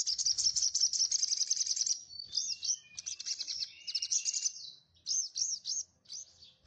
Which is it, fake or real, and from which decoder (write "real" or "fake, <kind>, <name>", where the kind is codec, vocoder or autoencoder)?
real